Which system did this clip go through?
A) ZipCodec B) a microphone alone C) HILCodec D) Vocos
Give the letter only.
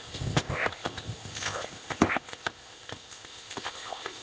A